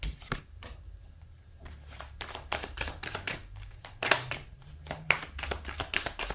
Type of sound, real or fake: fake